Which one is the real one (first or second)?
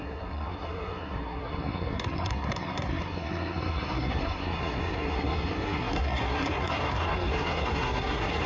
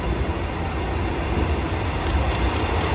second